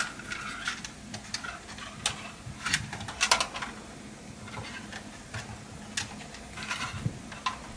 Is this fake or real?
real